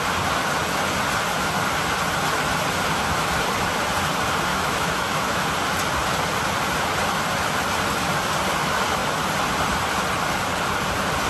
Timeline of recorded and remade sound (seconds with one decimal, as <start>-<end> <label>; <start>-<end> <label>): 0.0-4.5 recorded; 4.5-5.5 remade; 5.5-11.3 recorded